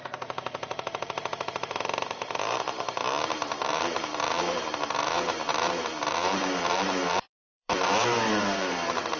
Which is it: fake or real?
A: fake